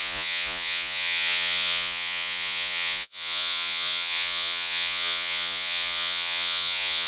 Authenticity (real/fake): fake